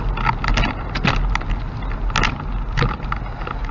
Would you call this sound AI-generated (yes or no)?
no